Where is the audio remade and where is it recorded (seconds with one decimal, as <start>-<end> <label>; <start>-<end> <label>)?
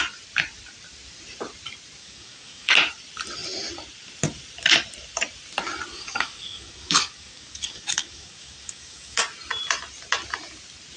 0.0-2.0 recorded; 2.0-2.7 remade; 2.7-5.9 recorded; 5.9-9.2 remade; 9.2-11.0 recorded